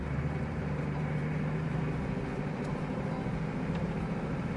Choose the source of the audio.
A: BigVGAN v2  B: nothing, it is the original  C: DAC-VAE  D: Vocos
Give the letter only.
A